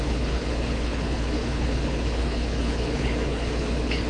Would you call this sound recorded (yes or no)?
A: no